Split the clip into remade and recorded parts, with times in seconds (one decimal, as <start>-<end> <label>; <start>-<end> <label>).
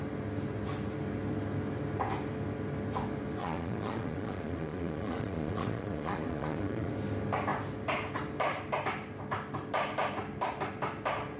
0.0-3.4 recorded; 3.4-6.9 remade; 6.9-11.4 recorded